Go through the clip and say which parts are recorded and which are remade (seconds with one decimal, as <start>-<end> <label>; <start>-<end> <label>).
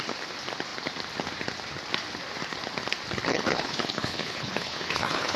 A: 0.0-3.3 recorded; 3.3-5.4 remade